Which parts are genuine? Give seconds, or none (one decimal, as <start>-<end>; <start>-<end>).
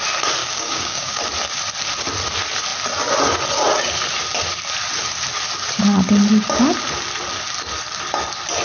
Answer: 0.0-0.4; 1.2-8.6